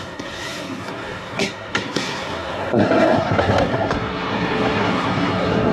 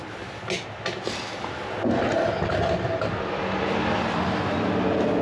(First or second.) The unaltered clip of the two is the second